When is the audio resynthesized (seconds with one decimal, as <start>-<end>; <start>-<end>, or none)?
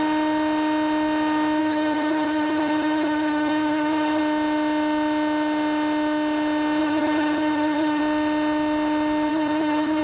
1.6-4.2; 6.8-8.0; 9.3-10.0